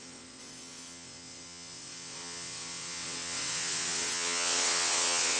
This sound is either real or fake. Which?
fake